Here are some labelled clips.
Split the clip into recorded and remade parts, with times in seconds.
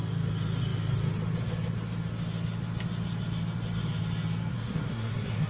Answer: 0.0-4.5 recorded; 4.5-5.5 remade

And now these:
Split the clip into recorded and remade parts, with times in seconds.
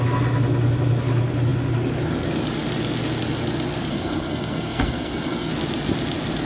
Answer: 0.0-3.9 recorded; 3.9-5.5 remade; 5.5-6.5 recorded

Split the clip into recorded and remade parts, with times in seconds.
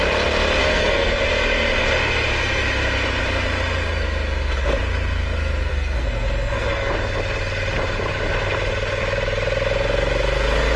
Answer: 0.0-0.6 recorded; 0.6-1.2 remade; 1.2-5.7 recorded; 5.7-6.9 remade; 6.9-10.8 recorded